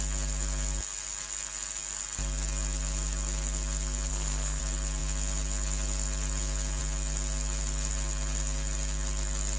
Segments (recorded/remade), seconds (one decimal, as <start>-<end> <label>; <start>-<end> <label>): 0.0-4.1 recorded; 4.1-4.6 remade; 4.6-9.6 recorded